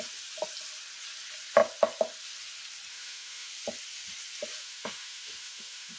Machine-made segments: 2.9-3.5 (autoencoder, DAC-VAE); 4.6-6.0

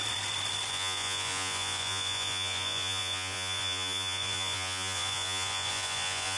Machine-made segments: 0.7-6.4 (vocoder, Vocos)

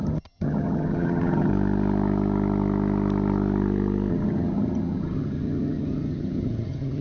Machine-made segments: 0.0-1.5 (vocoder, HiFi-GAN); 4.1-7.0

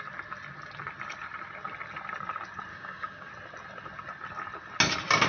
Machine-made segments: 2.7-3.3 (codec, DAC)

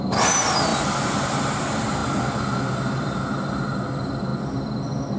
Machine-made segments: 0.7-1.4 (vocoder, BigVGAN v2)